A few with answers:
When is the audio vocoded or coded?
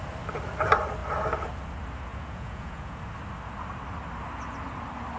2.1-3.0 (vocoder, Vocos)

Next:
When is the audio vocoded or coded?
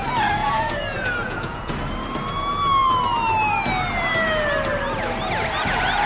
0.4-1.7 (vocoder, Vocos)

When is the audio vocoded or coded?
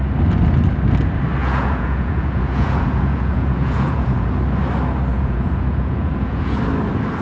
1.4-4.3 (vocoder, Vocos); 5.1-6.6